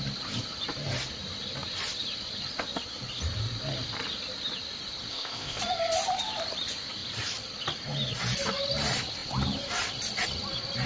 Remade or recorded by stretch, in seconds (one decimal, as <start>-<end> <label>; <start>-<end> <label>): 0.0-5.1 recorded; 5.1-5.6 remade; 5.6-10.9 recorded